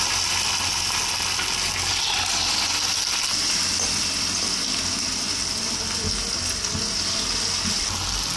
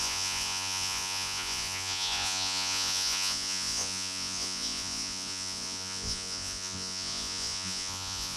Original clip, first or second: first